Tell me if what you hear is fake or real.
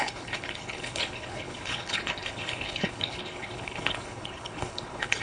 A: fake